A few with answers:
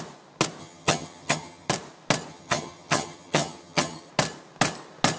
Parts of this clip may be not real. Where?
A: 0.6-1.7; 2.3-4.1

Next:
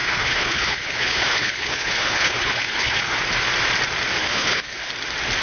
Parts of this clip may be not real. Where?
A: 0.0-3.2; 4.2-4.9

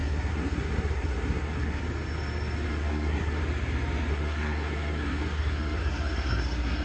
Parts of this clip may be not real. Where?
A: 0.0-1.8; 2.7-3.4; 4.1-6.8

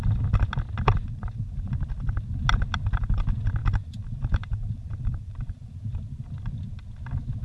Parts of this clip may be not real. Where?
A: 1.0-1.7; 3.6-5.7

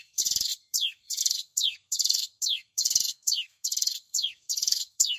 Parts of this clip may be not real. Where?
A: 0.0-5.2